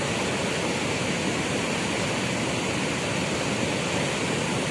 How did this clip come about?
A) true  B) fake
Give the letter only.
A